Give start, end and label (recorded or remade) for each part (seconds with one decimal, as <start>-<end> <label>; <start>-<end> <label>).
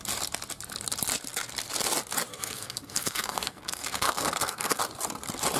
0.0-2.3 recorded; 2.3-4.8 remade; 4.8-5.6 recorded